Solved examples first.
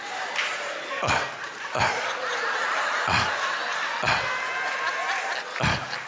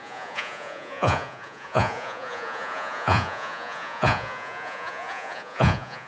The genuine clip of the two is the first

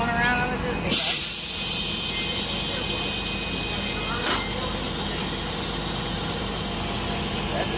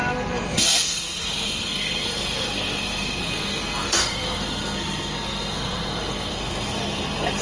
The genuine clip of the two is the first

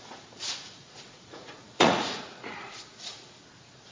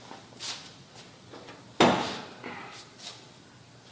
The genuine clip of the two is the second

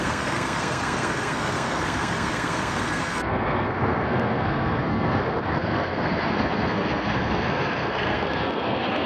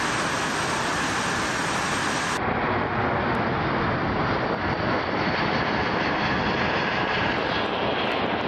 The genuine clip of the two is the second